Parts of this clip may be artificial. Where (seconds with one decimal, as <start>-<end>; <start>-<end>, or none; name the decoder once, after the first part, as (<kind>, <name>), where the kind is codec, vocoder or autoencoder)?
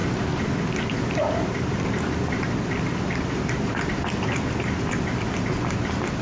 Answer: none